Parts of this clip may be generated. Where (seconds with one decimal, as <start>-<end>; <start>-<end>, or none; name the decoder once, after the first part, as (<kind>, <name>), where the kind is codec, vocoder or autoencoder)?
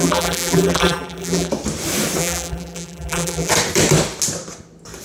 0.0-1.5 (vocoder, BigVGAN v2); 2.2-3.5